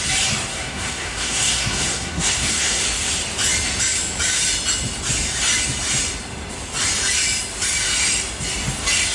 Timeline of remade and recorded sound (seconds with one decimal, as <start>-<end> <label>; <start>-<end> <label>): 0.0-0.5 recorded; 0.5-2.8 remade; 2.8-9.1 recorded

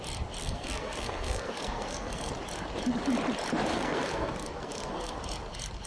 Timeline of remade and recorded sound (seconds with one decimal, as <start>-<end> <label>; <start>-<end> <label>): 0.0-0.4 recorded; 0.4-2.3 remade; 2.3-3.7 recorded; 3.7-5.2 remade; 5.2-5.9 recorded

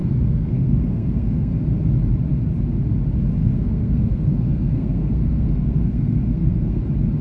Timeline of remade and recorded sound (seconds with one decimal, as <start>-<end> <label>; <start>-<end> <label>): 0.0-1.5 remade; 1.5-3.4 recorded; 3.4-6.8 remade; 6.8-7.2 recorded

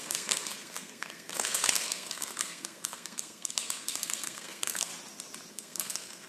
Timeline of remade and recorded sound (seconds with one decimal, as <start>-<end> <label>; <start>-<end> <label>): 0.0-4.9 remade; 4.9-5.5 recorded; 5.5-6.3 remade

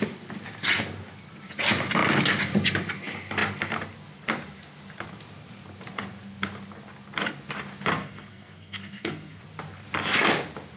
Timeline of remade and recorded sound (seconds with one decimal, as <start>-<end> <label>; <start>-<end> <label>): 0.0-8.0 recorded; 8.0-9.4 remade; 9.4-10.8 recorded

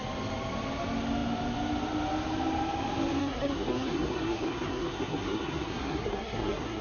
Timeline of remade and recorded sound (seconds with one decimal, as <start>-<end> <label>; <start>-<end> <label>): 0.0-3.2 recorded; 3.2-6.8 remade